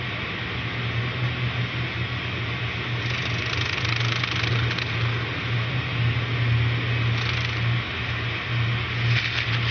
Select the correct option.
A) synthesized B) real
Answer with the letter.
B